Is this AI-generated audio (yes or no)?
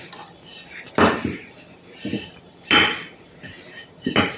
yes